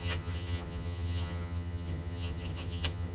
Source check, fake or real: fake